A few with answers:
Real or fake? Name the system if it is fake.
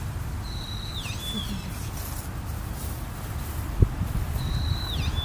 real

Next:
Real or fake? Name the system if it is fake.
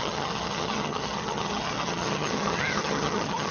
fake, vocoder, HiFi-GAN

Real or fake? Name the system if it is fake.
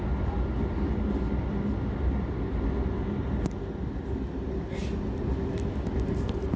real